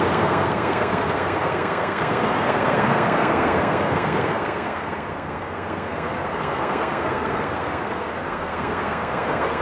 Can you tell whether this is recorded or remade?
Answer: remade